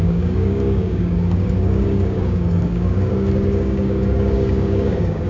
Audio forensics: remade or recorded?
remade